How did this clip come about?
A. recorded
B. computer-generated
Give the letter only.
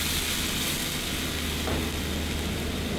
A